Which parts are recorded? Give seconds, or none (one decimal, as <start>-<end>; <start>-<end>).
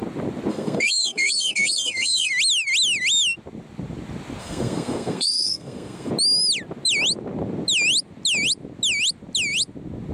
0.0-0.5; 2.3-4.4; 6.1-10.1